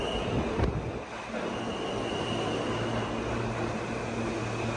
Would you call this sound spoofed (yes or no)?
no